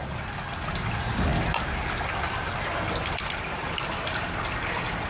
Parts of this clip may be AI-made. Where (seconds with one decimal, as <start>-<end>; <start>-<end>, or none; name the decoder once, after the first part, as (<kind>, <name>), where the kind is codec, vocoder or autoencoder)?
0.0-0.7 (vocoder, BigVGAN v2)